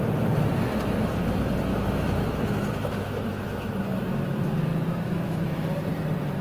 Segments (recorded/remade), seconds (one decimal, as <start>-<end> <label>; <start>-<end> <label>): 0.0-1.7 recorded; 1.7-3.7 remade; 3.7-4.7 recorded; 4.7-5.5 remade; 5.5-6.4 recorded